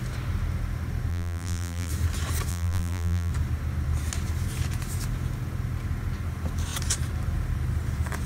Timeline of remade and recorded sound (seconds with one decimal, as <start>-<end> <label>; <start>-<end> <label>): 0.0-1.1 recorded; 1.1-1.9 remade; 1.9-2.5 recorded; 2.5-3.3 remade; 3.3-8.3 recorded